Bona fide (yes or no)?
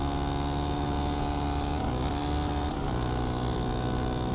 yes